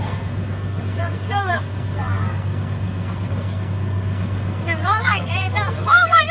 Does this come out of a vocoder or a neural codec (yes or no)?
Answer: yes